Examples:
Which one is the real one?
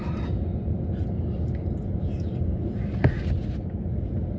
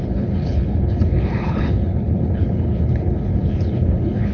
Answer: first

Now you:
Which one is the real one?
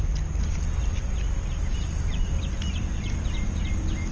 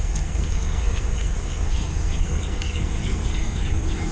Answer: first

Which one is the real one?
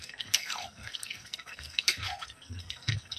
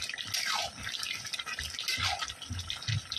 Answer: second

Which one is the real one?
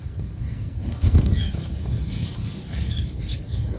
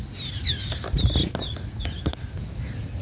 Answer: second